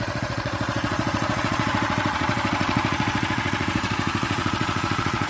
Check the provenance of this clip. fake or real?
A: fake